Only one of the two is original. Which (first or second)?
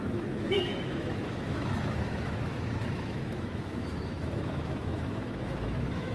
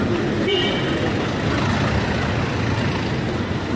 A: second